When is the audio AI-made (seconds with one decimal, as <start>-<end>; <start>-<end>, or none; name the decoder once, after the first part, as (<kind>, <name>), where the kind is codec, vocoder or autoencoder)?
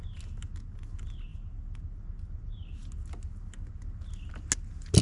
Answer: none